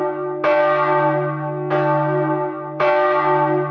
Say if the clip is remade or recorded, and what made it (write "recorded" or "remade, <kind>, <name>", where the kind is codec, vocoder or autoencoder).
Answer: recorded